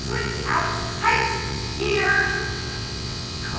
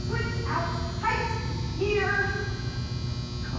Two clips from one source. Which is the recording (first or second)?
second